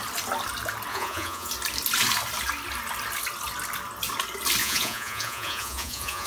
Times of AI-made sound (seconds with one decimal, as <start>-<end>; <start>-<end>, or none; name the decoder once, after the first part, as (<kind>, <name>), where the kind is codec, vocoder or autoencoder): 0.9-1.5 (vocoder, Vocos); 4.6-6.3